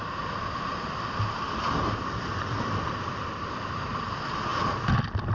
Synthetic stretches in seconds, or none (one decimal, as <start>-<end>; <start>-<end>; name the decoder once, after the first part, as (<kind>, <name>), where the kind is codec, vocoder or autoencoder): 2.0-3.8 (vocoder, BigVGAN v2)